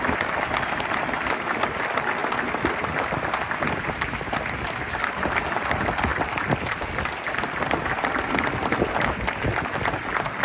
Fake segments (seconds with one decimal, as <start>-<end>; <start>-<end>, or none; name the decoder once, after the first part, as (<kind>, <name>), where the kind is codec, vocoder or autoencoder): 6.1-8.8 (vocoder, BigVGAN v2)